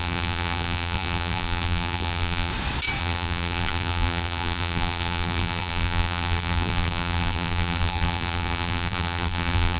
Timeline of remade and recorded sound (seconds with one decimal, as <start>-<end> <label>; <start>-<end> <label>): 0.0-2.5 remade; 2.5-3.0 recorded; 3.0-9.8 remade